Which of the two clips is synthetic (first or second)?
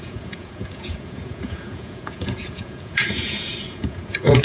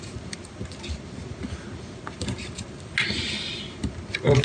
first